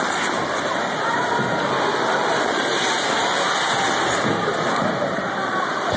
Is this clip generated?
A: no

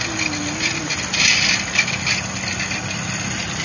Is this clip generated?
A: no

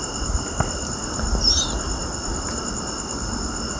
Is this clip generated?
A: no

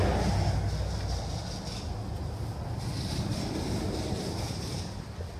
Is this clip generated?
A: no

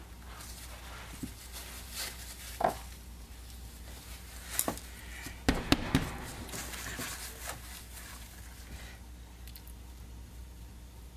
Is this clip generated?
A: no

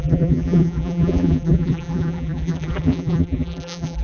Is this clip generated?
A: yes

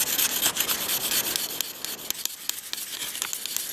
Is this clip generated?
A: no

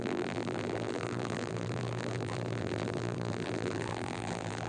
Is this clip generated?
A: yes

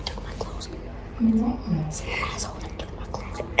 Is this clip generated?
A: no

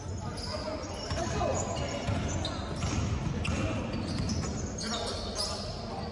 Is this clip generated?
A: no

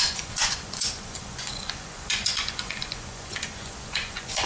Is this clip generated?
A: yes